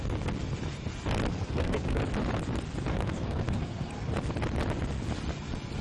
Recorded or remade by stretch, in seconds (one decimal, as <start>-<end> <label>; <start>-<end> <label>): 0.0-1.3 recorded; 1.3-2.0 remade; 2.0-2.9 recorded; 2.9-4.1 remade; 4.1-5.8 recorded